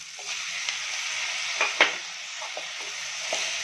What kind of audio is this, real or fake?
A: real